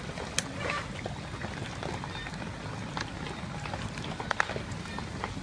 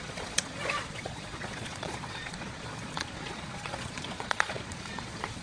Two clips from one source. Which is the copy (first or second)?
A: second